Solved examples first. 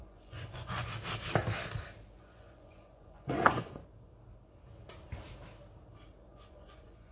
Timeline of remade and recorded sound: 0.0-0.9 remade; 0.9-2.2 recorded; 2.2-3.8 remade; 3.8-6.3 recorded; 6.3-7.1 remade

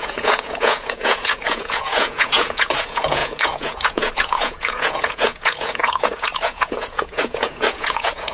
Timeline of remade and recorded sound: 0.0-8.3 remade

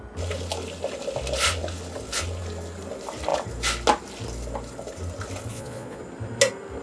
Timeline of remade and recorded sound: 0.0-5.5 recorded; 5.5-6.0 remade; 6.0-6.8 recorded

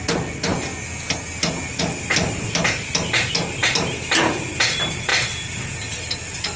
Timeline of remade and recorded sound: 0.0-6.6 recorded

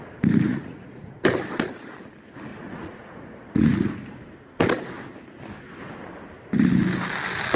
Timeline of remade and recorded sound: 0.0-0.5 recorded; 0.5-1.2 remade; 1.2-2.5 recorded; 2.5-3.9 remade; 3.9-7.5 recorded

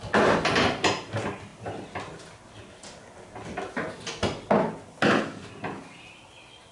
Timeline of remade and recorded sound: 0.0-6.7 recorded

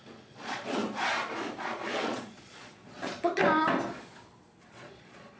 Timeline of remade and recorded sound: 0.0-0.8 remade; 0.8-1.6 recorded; 1.6-3.4 remade; 3.4-4.7 recorded; 4.7-5.4 remade

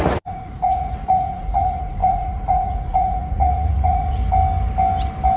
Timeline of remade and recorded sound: 0.0-4.2 remade; 4.2-5.4 recorded